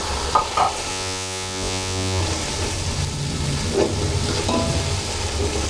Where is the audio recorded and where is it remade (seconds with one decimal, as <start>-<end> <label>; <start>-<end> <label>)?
0.0-0.9 recorded; 0.9-2.2 remade; 2.2-5.7 recorded